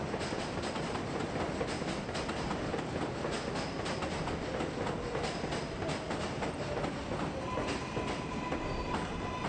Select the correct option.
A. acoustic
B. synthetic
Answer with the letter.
A